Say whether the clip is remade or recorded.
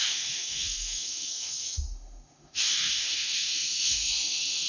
remade